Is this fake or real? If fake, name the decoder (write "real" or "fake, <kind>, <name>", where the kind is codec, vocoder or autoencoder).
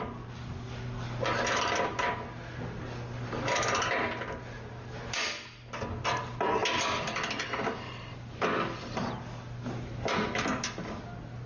real